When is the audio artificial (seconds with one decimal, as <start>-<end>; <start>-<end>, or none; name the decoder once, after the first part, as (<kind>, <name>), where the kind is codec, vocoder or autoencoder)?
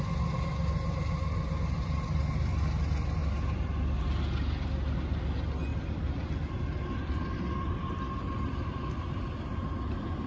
3.2-4.0 (vocoder, BigVGAN v2); 5.7-9.9